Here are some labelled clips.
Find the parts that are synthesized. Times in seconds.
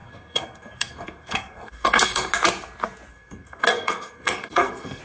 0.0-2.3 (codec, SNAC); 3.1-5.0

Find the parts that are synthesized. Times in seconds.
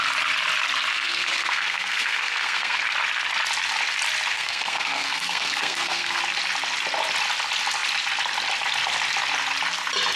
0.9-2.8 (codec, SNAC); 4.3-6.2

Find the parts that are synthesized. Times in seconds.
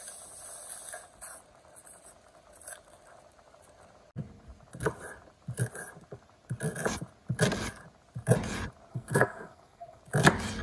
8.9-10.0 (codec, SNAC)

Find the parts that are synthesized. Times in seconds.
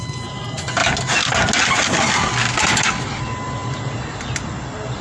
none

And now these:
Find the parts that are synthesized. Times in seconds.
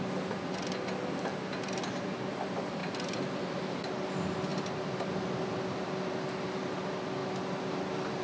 none